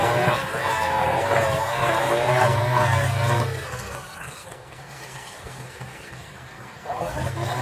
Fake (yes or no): yes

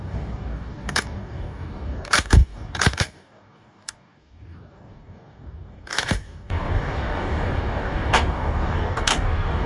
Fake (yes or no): yes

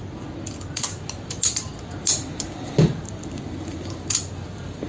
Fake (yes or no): no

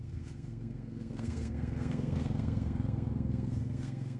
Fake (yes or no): yes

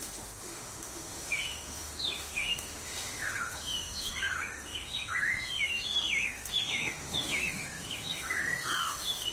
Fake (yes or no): yes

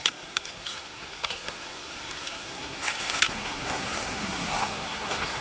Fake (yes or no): yes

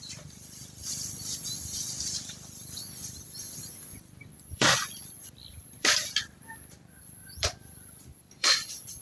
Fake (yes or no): yes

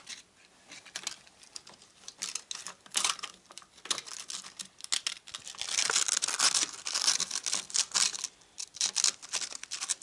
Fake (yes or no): no